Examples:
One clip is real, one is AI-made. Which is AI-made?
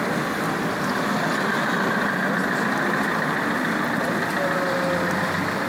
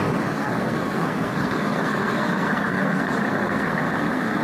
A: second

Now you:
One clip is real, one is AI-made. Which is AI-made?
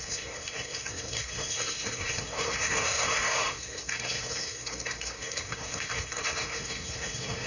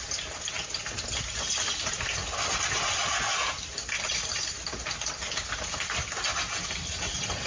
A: first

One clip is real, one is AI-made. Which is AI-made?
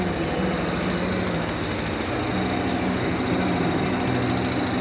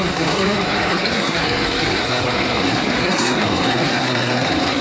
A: second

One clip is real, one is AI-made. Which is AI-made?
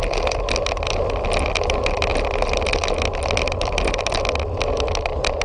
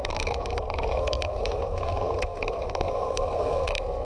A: second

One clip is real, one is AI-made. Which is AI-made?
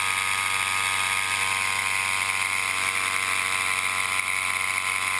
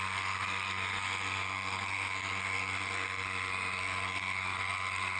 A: second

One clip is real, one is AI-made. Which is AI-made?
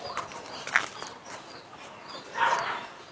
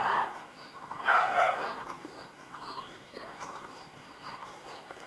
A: second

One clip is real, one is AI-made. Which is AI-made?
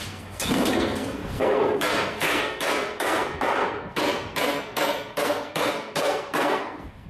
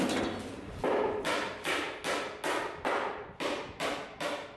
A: first